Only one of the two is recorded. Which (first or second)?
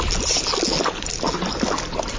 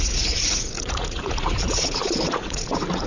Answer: first